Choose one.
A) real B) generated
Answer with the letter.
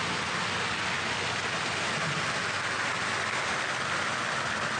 A